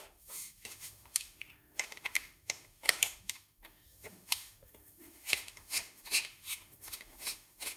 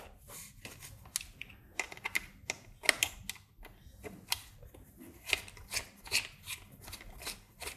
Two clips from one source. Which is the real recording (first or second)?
second